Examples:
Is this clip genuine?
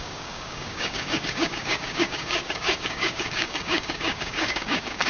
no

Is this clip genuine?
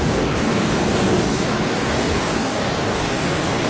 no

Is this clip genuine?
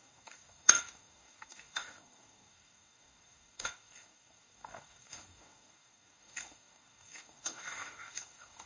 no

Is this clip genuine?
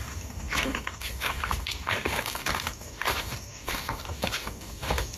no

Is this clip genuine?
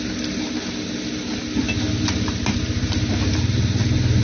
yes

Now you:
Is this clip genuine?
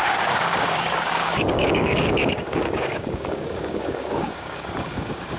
no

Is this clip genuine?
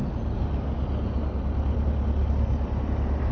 yes